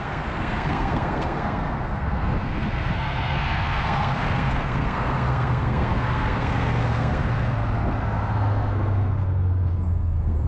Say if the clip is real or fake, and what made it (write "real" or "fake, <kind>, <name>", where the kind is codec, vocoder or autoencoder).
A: fake, codec, SNAC